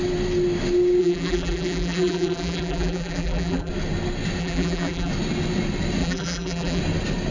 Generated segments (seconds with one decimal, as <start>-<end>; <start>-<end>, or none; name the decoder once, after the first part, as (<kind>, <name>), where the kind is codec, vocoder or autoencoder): 1.0-3.7 (vocoder, BigVGAN v2); 4.4-5.1; 6.0-6.8